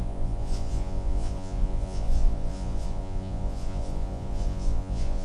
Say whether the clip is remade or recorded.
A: remade